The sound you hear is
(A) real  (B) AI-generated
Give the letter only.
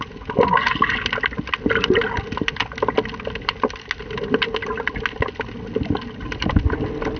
A